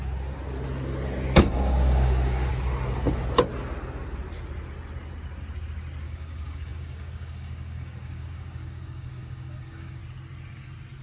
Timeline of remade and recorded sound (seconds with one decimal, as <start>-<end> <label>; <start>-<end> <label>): 0.0-1.4 recorded; 1.4-2.5 remade; 2.5-6.0 recorded; 6.0-10.0 remade; 10.0-11.0 recorded